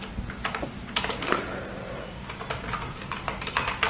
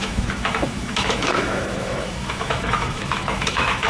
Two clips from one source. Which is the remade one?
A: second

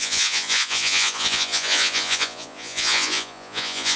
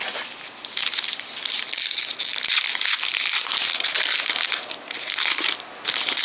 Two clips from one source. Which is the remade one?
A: first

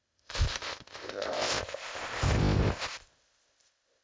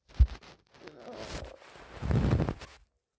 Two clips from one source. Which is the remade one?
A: first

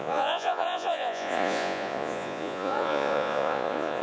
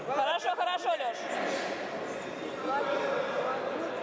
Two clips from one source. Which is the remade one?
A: first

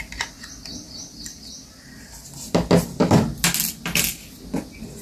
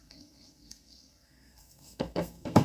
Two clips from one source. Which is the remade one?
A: second